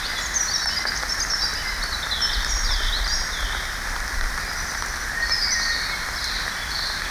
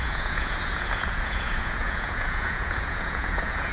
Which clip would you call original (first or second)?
first